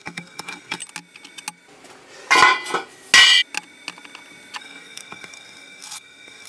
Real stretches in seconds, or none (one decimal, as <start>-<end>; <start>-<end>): 0.8-4.6